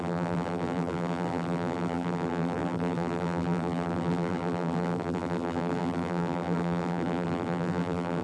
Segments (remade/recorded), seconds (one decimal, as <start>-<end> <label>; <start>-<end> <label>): 0.0-8.2 remade